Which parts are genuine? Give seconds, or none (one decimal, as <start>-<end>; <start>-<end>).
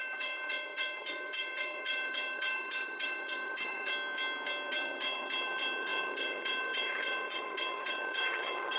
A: 3.9-4.7